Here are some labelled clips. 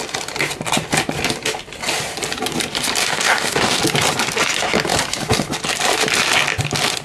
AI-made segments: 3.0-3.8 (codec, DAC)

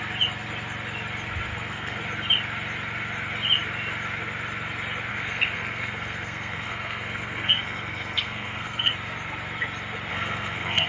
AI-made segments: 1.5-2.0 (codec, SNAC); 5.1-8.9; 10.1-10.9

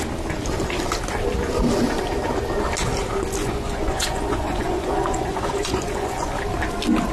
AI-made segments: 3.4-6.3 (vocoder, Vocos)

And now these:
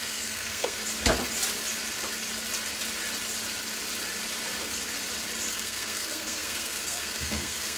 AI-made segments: 0.0-0.8 (codec, SNAC); 5.5-7.8